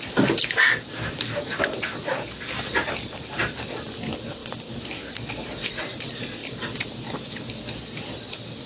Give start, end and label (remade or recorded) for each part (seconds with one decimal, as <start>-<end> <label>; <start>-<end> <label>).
0.0-8.7 recorded